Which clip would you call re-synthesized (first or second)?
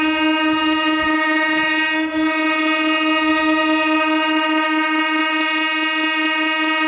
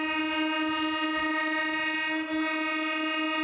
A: first